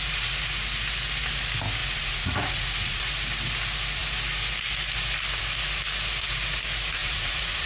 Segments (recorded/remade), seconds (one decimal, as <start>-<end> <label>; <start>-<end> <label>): 0.0-1.8 recorded; 1.8-3.0 remade; 3.0-7.0 recorded; 7.0-7.7 remade